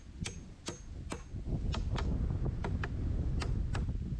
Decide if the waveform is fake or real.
real